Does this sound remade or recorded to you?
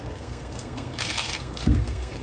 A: remade